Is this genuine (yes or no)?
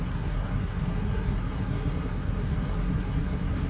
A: no